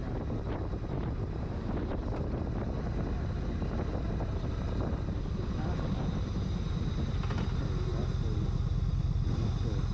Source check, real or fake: real